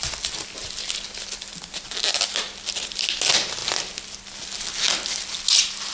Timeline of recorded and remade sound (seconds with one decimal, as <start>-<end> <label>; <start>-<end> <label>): 0.0-5.9 recorded